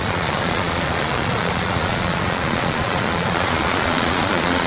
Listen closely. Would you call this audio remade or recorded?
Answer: remade